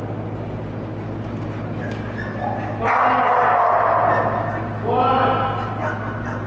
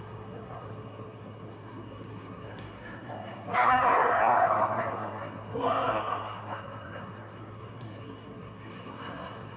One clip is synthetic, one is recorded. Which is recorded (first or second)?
first